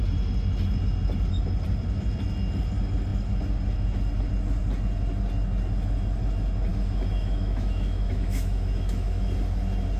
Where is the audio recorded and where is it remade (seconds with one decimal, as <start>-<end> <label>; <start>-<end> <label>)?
0.0-6.7 recorded; 6.7-9.3 remade; 9.3-10.0 recorded